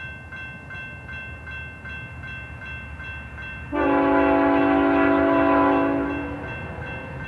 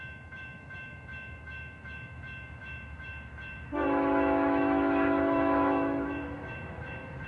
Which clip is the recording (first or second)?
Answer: first